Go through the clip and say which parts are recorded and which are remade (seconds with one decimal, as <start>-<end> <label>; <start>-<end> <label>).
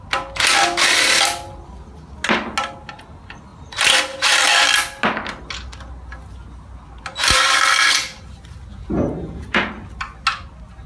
0.0-8.7 recorded; 8.7-9.7 remade; 9.7-10.9 recorded